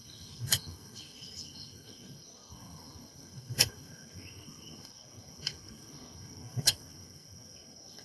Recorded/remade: remade